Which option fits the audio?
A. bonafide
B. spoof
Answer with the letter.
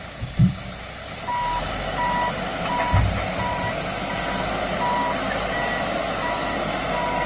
A